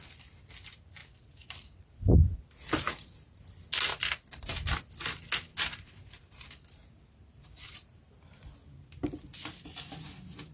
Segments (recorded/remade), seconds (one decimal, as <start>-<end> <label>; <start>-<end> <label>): 0.0-1.0 recorded; 1.0-2.4 remade; 2.4-3.9 recorded; 3.9-4.8 remade; 4.8-5.5 recorded; 5.5-8.1 remade; 8.1-10.5 recorded